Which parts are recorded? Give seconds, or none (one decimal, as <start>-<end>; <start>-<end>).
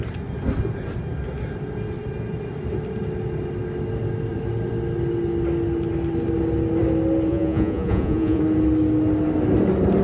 0.0-7.3; 8.4-10.0